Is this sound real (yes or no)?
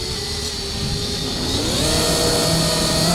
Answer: yes